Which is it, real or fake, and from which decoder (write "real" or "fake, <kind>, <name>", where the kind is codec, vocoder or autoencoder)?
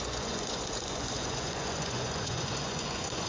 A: fake, vocoder, Vocos